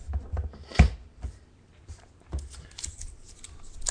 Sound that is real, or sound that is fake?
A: real